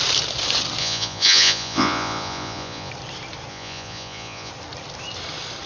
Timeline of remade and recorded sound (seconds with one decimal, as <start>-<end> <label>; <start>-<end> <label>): 0.0-0.8 recorded; 0.8-2.9 remade; 2.9-3.5 recorded; 3.5-4.5 remade; 4.5-5.7 recorded